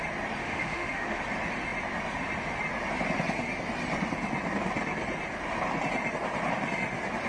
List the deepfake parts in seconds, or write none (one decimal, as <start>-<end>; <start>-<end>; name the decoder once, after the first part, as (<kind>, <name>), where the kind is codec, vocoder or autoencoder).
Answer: 0.4-1.2 (autoencoder, DAC-VAE)